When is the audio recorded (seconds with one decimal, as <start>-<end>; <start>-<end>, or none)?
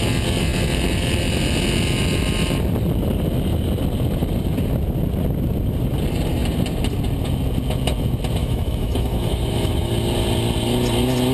0.0-8.4; 9.9-11.3